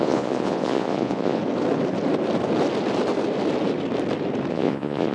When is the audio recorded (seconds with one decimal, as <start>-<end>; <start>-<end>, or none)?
1.4-4.5